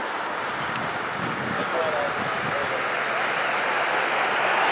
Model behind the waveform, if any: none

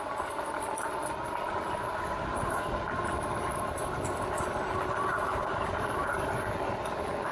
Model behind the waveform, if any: none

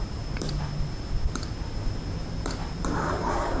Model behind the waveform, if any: vocoder, BigVGAN v2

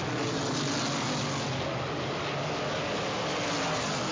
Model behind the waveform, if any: none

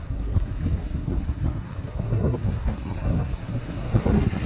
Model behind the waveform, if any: codec, SNAC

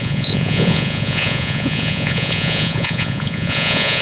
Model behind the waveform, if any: vocoder, Vocos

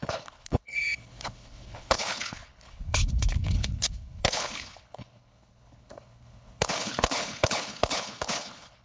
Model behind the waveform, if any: codec, HILCodec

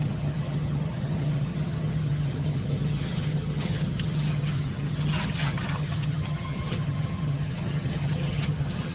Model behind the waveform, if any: vocoder, HiFi-GAN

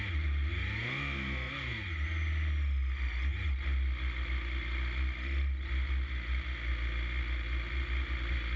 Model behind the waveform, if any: none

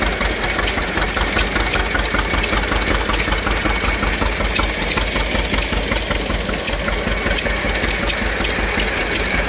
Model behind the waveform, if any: none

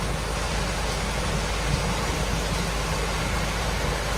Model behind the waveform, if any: none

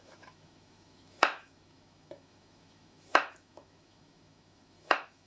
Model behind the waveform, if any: autoencoder, DAC-VAE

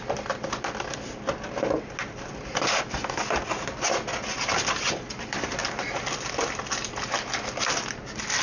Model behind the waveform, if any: none